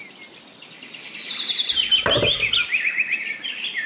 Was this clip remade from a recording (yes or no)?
no